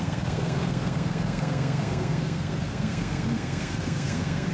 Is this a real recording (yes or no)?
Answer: no